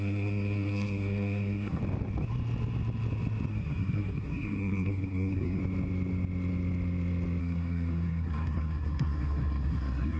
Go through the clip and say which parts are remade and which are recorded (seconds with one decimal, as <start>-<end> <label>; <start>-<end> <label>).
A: 0.0-1.8 remade; 1.8-3.5 recorded; 3.5-5.6 remade; 5.6-7.4 recorded; 7.4-10.2 remade